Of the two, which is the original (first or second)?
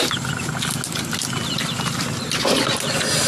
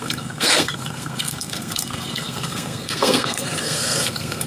first